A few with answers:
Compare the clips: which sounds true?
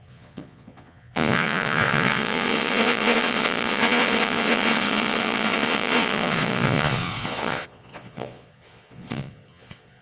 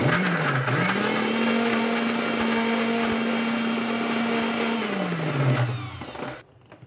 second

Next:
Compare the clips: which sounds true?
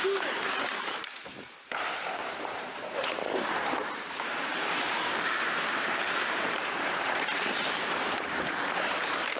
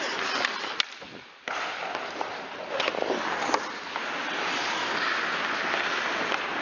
second